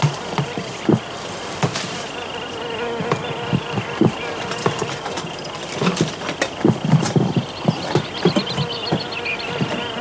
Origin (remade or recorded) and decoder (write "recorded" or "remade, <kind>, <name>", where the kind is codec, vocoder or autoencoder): recorded